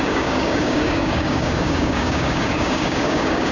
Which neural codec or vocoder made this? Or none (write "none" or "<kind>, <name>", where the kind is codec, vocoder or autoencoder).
codec, DAC